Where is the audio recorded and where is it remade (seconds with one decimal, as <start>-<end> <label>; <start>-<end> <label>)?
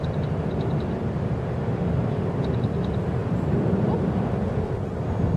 0.0-5.4 recorded